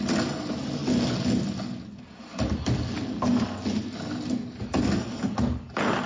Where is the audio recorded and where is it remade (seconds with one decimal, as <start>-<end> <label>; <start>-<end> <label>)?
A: 0.0-6.1 recorded